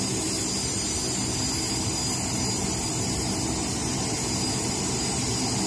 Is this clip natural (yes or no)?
yes